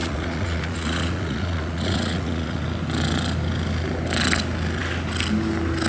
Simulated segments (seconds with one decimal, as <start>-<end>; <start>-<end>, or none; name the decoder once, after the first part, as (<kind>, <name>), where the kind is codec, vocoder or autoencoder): 0.0-2.6 (vocoder, Vocos)